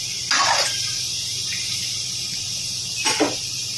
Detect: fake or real real